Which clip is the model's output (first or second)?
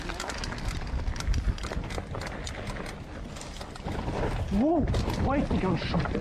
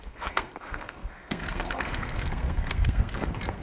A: second